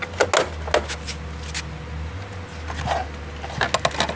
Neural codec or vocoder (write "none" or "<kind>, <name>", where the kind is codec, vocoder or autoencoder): none